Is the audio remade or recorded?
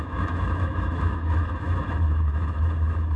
remade